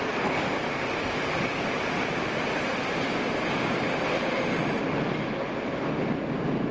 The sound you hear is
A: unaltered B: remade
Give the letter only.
A